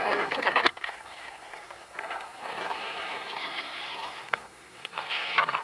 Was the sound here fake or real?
fake